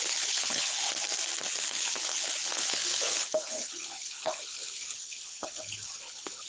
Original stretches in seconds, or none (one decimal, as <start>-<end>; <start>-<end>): 0.9-1.7

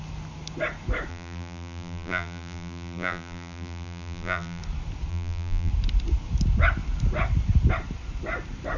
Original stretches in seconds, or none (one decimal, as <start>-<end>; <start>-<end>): 0.0-1.1; 4.6-5.1; 5.7-8.8

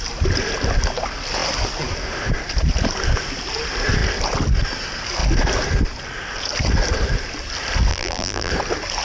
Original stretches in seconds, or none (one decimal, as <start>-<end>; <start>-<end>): 0.0-7.9; 8.5-9.0

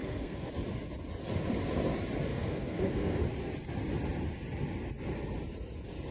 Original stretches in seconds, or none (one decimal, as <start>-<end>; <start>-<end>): 0.5-2.3; 3.2-6.1

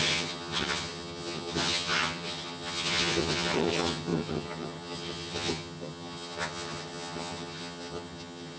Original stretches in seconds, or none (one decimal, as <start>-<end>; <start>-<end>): none